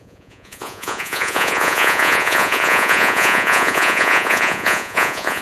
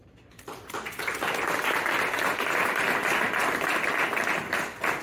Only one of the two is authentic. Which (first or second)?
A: second